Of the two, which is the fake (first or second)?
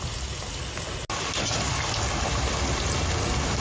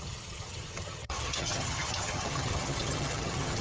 second